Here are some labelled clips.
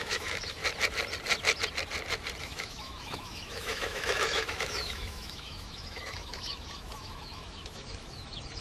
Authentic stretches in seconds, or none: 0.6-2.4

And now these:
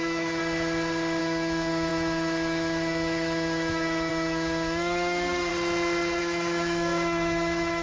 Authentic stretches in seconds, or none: 0.4-1.2; 5.5-6.2

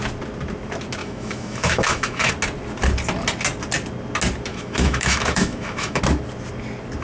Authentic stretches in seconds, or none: 0.0-1.0; 2.3-4.5; 6.0-7.0

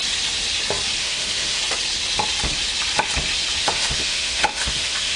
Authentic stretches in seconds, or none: 0.0-1.0; 1.6-3.6

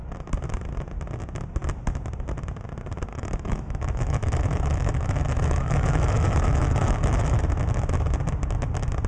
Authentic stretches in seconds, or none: 0.0-3.1; 7.4-9.1

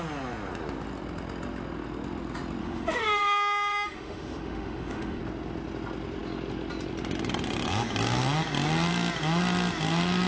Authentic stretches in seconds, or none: 0.0-2.6; 5.2-10.3

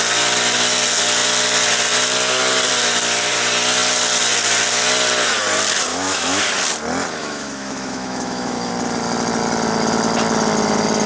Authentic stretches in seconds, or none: 0.0-5.9; 6.4-7.2; 8.7-11.1

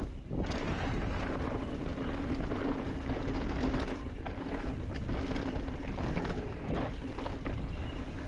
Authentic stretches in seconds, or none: 0.0-8.3